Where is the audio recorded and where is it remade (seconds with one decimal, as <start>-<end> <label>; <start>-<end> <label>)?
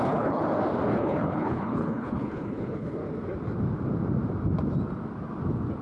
0.0-0.4 remade; 0.4-1.0 recorded; 1.0-3.0 remade; 3.0-5.8 recorded